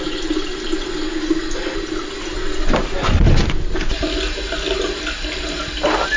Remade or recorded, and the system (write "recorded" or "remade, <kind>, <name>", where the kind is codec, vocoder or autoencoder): recorded